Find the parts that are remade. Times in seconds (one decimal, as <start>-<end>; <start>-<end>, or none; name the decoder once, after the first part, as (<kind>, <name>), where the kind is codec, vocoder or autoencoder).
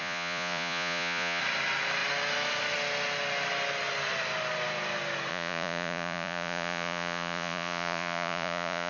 0.0-1.4 (vocoder, Vocos); 5.3-8.9